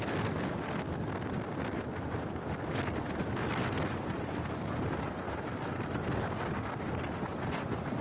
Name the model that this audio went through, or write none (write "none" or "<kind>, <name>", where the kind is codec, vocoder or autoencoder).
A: none